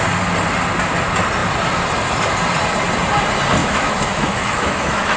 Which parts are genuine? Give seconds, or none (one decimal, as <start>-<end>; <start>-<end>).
0.0-3.6